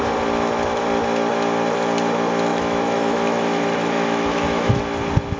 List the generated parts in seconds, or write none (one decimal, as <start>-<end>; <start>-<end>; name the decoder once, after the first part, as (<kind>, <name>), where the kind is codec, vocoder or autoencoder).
2.5-4.8 (autoencoder, DAC-VAE)